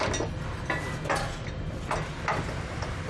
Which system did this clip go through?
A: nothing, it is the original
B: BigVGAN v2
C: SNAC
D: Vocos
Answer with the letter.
A